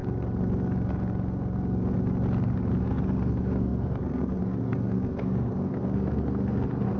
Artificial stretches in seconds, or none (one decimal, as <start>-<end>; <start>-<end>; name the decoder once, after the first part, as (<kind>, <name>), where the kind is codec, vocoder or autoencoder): 2.8-7.0 (codec, SNAC)